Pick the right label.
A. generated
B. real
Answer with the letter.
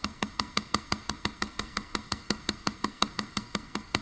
A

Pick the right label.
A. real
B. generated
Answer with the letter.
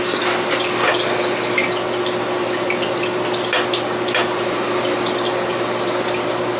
A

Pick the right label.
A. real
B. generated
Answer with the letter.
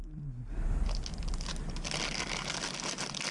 A